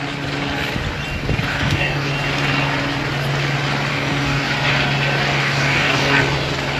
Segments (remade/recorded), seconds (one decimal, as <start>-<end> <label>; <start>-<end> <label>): 0.0-1.5 recorded; 1.5-2.1 remade; 2.1-3.9 recorded; 3.9-4.5 remade; 4.5-5.3 recorded; 5.3-6.2 remade; 6.2-6.8 recorded